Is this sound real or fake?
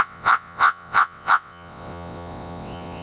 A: fake